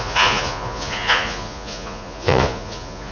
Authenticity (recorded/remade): remade